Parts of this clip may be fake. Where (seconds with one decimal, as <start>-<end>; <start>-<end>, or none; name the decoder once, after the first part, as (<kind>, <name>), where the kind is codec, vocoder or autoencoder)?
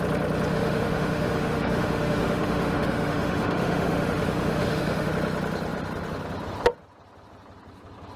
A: 0.5-5.1 (autoencoder, DAC-VAE)